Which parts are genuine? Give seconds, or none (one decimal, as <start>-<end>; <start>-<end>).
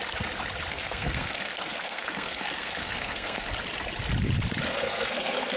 0.0-0.7; 3.5-4.7